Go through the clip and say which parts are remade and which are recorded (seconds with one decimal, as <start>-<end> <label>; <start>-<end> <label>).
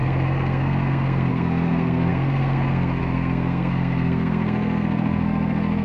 0.0-5.8 remade